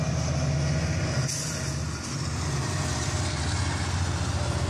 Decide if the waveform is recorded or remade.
recorded